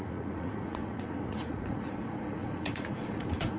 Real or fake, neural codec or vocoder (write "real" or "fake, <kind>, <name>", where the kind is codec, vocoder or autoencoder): fake, vocoder, Vocos